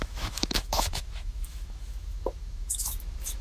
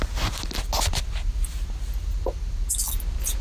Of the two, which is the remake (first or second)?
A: first